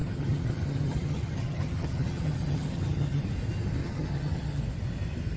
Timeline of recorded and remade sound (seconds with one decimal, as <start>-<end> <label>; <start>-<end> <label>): 0.0-3.2 remade; 3.2-3.8 recorded; 3.8-4.6 remade; 4.6-5.4 recorded